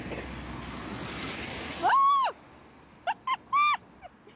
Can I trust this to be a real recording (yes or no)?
yes